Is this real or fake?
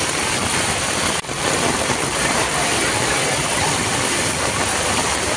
fake